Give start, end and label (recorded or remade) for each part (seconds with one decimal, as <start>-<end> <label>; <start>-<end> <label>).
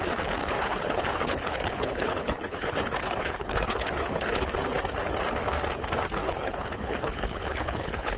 0.0-0.4 recorded; 0.4-4.5 remade; 4.5-6.2 recorded; 6.2-8.2 remade